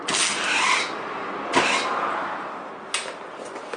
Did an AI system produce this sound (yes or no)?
no